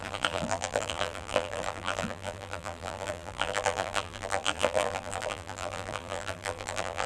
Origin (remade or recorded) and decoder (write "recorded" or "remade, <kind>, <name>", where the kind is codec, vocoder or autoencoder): remade, vocoder, BigVGAN v2